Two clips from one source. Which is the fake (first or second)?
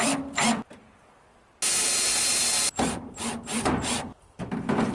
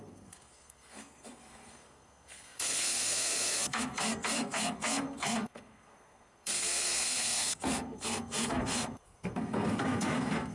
second